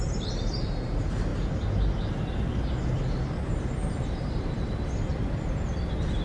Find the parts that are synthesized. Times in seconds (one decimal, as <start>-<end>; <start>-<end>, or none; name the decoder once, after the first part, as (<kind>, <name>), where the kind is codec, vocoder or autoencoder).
3.8-4.7 (vocoder, BigVGAN v2)